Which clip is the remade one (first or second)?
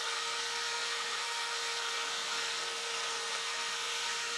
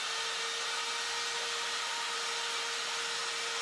first